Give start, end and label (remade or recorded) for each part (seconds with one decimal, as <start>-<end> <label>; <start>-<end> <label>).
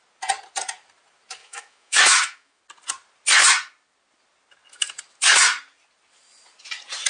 0.0-1.4 recorded; 1.4-2.6 remade; 2.6-7.1 recorded